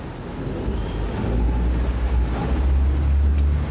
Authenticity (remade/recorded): recorded